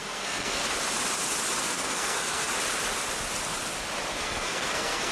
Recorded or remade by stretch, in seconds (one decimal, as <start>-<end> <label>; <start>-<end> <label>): 0.0-0.6 remade; 0.6-1.6 recorded; 1.6-2.5 remade; 2.5-4.2 recorded; 4.2-5.1 remade

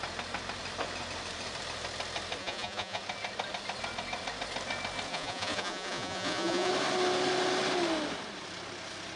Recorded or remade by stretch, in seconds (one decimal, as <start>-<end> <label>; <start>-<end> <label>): 0.0-2.4 recorded; 2.4-3.0 remade; 3.0-5.1 recorded; 5.1-6.7 remade; 6.7-9.2 recorded

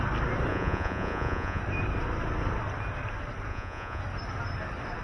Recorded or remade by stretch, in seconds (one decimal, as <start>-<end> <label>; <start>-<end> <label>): 0.0-0.5 recorded; 0.5-1.6 remade; 1.6-3.5 recorded; 3.5-4.0 remade; 4.0-5.0 recorded

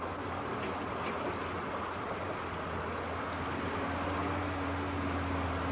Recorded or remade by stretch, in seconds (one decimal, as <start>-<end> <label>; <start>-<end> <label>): 0.0-5.7 recorded

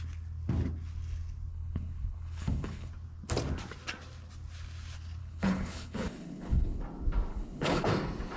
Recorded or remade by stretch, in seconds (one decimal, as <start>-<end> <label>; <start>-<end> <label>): 0.0-1.5 recorded; 1.5-2.9 remade; 2.9-5.2 recorded; 5.2-6.8 remade; 6.8-7.3 recorded; 7.3-7.9 remade; 7.9-8.4 recorded

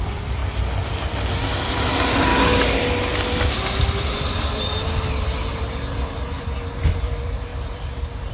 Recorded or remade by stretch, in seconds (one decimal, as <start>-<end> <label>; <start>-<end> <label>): 0.0-0.4 remade; 0.4-1.7 recorded; 1.7-2.3 remade; 2.3-7.0 recorded; 7.0-8.3 remade

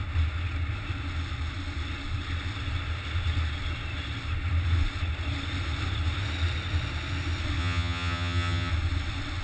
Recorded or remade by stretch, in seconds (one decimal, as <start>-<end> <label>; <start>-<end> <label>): 0.0-7.6 recorded; 7.6-8.7 remade; 8.7-9.4 recorded

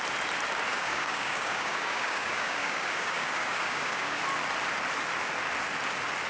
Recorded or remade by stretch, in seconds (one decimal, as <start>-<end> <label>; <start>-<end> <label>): 0.0-0.7 recorded; 0.7-4.2 remade; 4.2-6.3 recorded